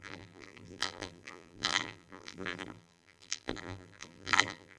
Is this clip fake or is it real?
fake